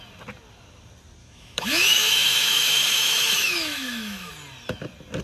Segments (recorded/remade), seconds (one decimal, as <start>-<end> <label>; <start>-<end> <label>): 0.0-1.2 recorded; 1.2-4.3 remade; 4.3-5.2 recorded